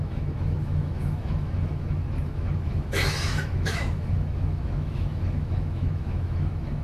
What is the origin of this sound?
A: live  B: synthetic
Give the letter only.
B